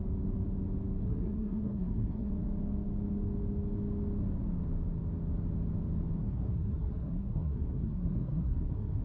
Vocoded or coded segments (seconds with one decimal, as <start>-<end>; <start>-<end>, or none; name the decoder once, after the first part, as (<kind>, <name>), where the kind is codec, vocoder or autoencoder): 1.0-2.3 (codec, SNAC); 6.2-9.0